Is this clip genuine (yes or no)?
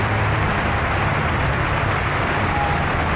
no